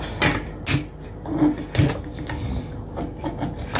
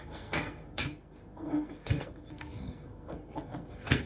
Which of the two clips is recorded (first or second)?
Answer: first